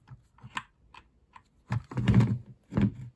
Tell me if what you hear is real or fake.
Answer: real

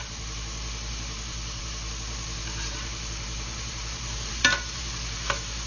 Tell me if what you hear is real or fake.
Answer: fake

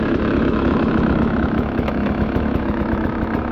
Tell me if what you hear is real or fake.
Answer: fake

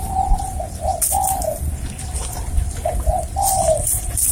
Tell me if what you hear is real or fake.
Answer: fake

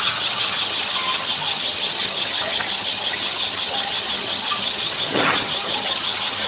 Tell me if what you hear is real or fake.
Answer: fake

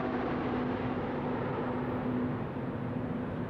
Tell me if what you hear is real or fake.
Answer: real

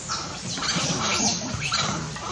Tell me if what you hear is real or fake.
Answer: real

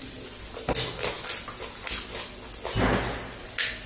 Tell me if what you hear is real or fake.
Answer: real